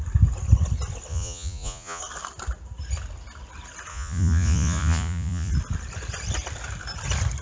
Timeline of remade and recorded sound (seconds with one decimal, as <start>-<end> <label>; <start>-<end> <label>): 0.0-1.1 recorded; 1.1-2.0 remade; 2.0-3.9 recorded; 3.9-5.5 remade; 5.5-7.4 recorded